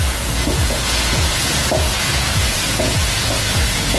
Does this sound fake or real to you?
fake